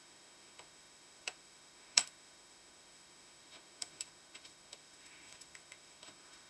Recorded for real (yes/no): no